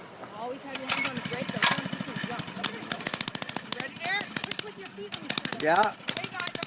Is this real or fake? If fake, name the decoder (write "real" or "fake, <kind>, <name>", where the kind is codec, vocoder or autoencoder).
real